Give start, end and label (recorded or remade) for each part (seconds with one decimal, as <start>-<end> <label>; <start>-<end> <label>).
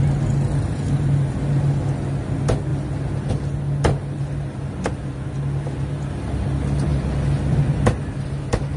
0.0-8.8 recorded